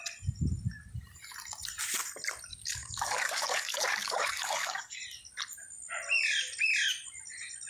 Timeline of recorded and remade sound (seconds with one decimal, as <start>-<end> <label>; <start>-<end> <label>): 0.0-2.5 recorded; 2.5-5.0 remade; 5.0-7.7 recorded

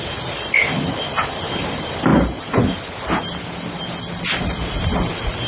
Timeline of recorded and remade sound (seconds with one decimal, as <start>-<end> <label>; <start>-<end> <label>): 0.0-5.5 recorded